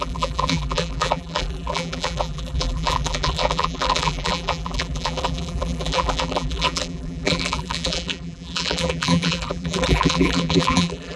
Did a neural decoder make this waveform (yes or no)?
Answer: yes